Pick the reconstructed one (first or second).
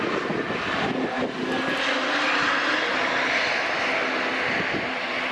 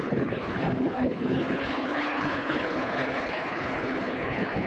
second